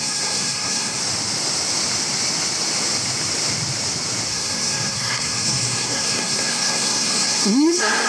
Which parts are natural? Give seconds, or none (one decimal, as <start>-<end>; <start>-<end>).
1.0-4.3